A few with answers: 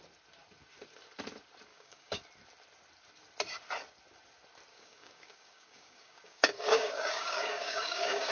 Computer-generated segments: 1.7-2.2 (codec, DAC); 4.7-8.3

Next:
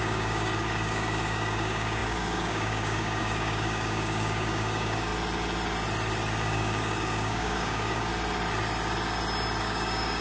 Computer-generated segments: 0.0-5.1 (codec, DAC); 6.4-8.1; 9.6-10.2